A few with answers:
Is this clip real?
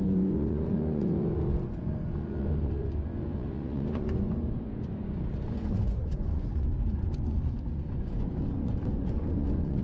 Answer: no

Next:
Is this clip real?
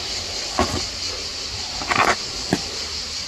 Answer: yes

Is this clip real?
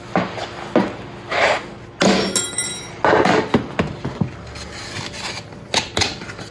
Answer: yes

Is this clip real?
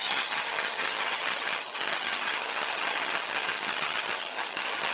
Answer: no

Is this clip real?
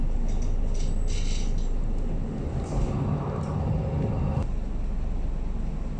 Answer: yes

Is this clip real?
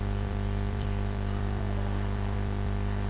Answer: no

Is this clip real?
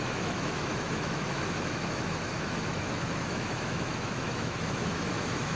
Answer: no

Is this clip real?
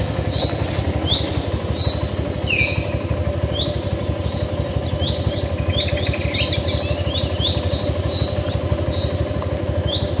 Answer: yes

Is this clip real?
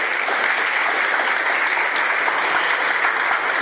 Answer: yes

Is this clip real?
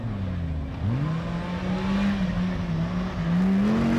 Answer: yes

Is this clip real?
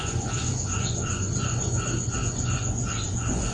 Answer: no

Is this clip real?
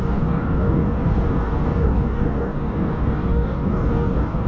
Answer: no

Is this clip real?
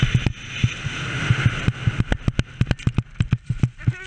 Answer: yes